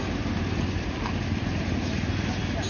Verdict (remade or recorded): recorded